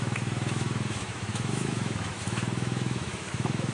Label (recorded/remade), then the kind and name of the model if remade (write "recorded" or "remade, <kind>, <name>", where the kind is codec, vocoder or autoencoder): remade, autoencoder, DAC-VAE